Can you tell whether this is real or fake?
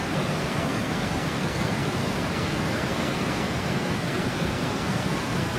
fake